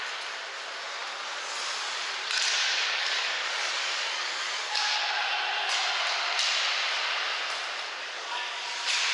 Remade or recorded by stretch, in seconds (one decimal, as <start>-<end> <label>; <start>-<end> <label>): 0.0-2.6 recorded; 2.6-5.0 remade; 5.0-8.0 recorded; 8.0-8.6 remade; 8.6-9.1 recorded

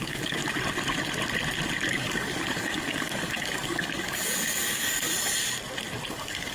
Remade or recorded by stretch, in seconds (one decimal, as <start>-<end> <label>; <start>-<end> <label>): 0.0-0.4 remade; 0.4-1.9 recorded; 1.9-5.1 remade; 5.1-6.1 recorded; 6.1-6.5 remade

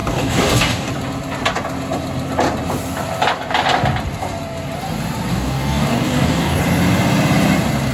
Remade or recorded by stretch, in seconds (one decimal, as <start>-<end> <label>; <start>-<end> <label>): 0.0-0.9 remade; 0.9-5.3 recorded; 5.3-6.6 remade; 6.6-7.9 recorded

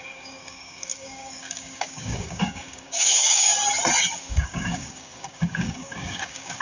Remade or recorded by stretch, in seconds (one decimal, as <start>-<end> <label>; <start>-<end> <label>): 0.0-3.5 remade; 3.5-4.3 recorded; 4.3-6.6 remade